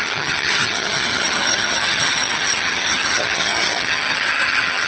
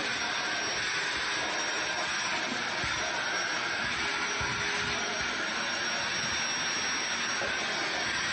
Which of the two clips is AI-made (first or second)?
first